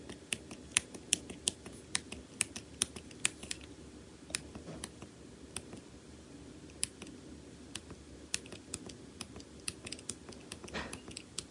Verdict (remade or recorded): recorded